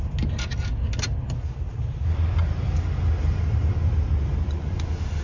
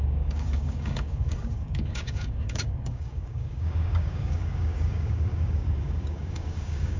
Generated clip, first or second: second